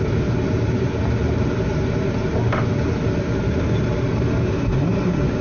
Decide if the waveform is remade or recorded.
remade